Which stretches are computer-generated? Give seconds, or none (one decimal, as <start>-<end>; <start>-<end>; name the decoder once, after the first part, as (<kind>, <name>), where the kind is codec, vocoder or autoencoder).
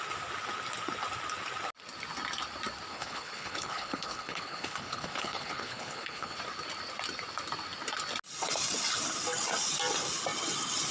2.9-6.4 (codec, HILCodec)